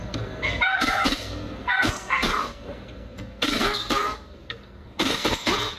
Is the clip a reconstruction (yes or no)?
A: yes